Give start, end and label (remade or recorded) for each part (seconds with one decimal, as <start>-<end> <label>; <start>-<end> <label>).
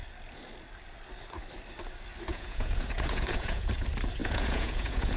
0.0-2.3 recorded; 2.3-3.8 remade; 3.8-4.2 recorded; 4.2-5.2 remade